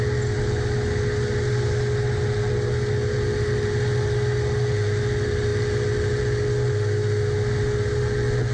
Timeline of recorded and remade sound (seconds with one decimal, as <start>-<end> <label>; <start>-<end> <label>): 0.0-8.5 recorded